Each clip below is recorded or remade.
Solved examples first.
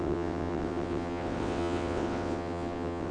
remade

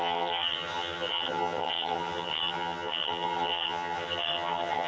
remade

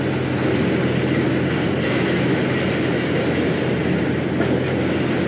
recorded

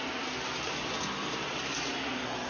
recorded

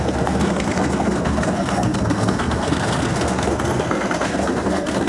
remade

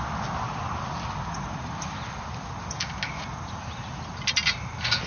recorded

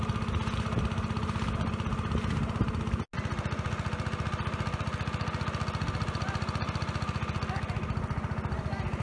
recorded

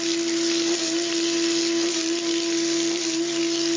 recorded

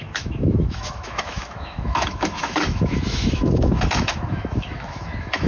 remade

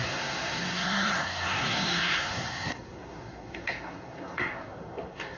remade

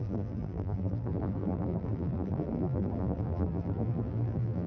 remade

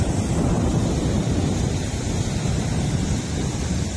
recorded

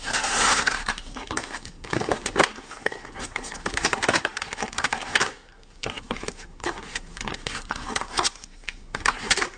remade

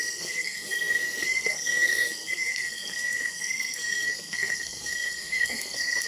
remade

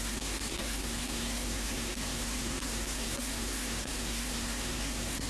remade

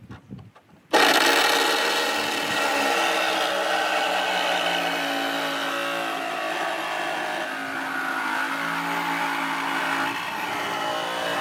recorded